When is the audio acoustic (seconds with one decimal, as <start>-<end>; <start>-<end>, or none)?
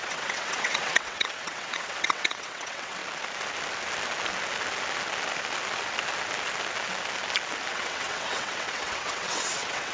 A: 3.0-7.7